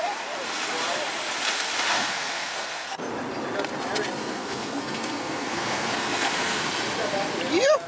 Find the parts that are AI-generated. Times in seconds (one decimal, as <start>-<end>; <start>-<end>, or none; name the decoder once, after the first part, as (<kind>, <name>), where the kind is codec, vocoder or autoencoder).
2.0-3.1 (codec, SNAC); 4.2-6.6